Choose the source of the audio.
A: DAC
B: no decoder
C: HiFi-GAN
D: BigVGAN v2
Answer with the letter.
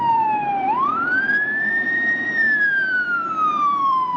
D